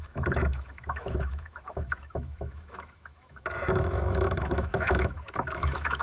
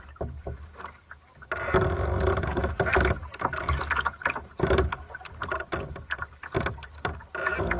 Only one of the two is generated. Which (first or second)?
first